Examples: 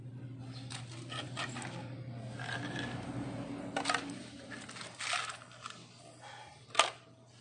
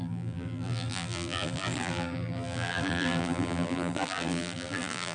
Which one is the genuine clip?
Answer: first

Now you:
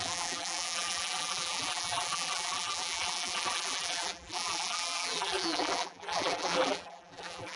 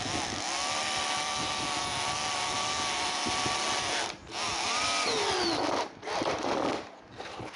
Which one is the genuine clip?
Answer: second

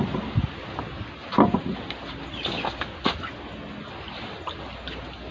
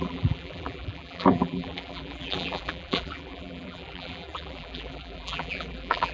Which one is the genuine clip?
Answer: first